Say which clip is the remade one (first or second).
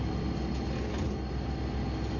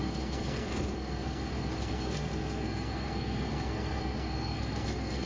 second